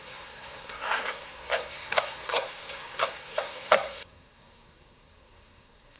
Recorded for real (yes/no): no